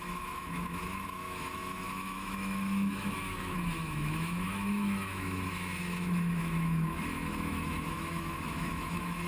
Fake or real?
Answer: fake